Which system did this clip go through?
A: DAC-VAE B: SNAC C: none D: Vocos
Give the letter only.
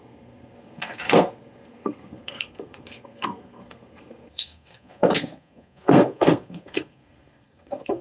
B